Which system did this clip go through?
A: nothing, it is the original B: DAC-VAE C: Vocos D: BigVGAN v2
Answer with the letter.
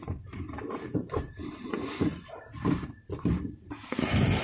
D